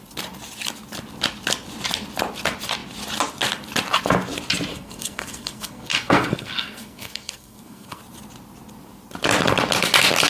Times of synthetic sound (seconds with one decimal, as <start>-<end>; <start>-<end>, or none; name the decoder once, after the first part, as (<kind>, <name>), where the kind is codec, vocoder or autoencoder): 4.7-8.0 (codec, SNAC)